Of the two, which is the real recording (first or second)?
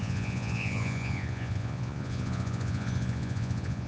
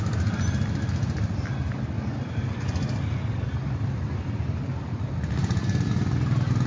second